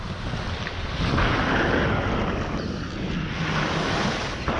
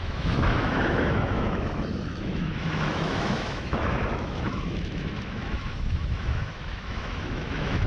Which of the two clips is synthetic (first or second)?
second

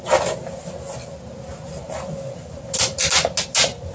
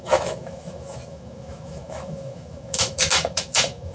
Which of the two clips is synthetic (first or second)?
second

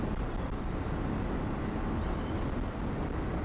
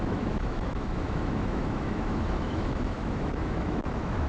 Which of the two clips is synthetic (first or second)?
second